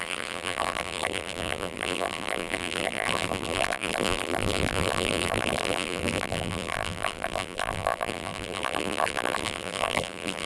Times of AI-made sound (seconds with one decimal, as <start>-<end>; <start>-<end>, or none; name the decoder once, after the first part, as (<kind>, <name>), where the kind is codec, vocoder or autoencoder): 0.0-10.5 (vocoder, BigVGAN v2)